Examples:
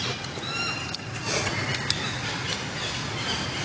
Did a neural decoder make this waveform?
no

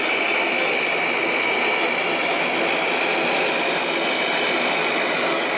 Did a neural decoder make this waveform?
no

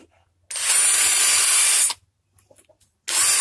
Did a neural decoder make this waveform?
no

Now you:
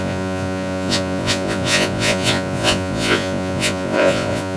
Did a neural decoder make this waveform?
yes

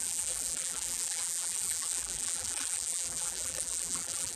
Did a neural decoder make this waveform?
yes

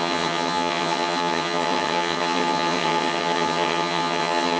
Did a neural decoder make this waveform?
yes